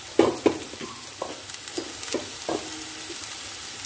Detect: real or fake real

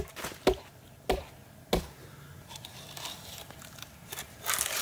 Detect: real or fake real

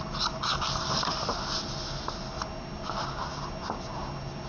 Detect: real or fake real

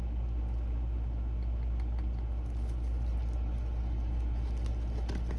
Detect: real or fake real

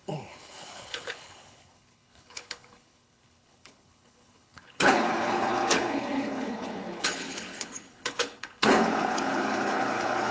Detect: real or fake fake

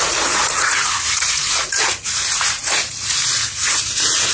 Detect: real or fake fake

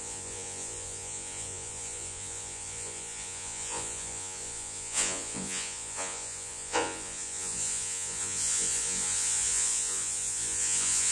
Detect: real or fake fake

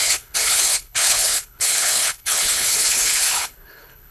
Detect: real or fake fake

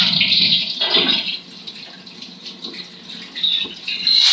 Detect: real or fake real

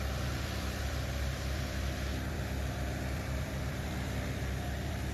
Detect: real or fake fake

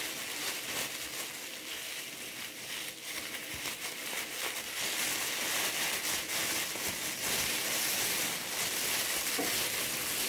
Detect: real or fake real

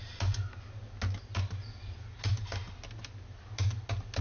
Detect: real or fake real